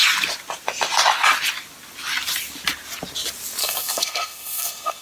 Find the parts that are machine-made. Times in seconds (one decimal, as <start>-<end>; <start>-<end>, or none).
3.6-5.0